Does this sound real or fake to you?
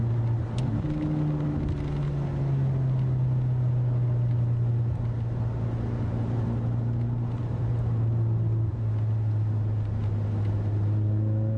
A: real